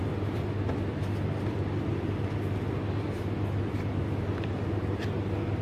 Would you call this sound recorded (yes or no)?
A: yes